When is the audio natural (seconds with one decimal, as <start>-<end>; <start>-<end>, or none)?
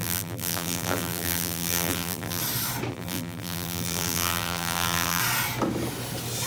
2.4-2.9; 5.2-6.5